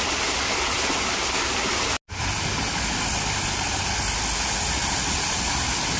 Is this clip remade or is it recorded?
recorded